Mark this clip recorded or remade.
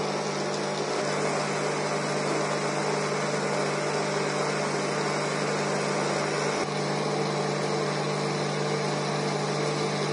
recorded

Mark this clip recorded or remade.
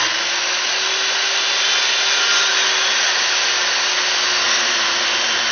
recorded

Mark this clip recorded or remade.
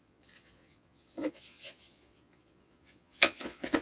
remade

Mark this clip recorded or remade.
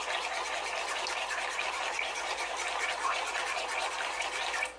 recorded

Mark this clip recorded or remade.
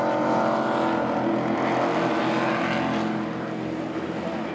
recorded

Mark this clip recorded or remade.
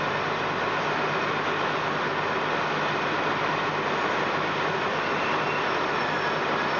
recorded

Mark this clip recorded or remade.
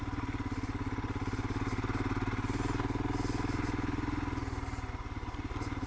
recorded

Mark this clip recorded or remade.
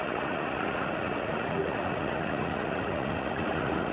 remade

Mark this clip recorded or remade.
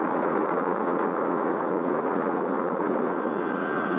remade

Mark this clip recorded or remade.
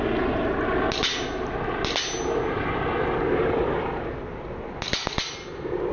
recorded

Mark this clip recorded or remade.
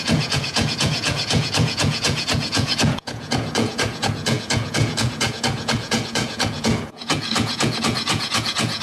remade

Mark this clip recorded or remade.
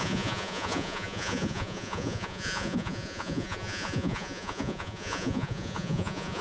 remade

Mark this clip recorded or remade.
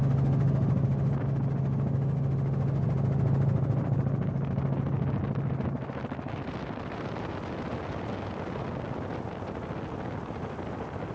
recorded